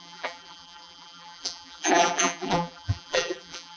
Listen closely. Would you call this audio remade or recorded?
remade